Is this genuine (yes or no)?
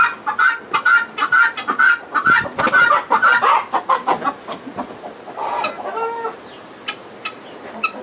yes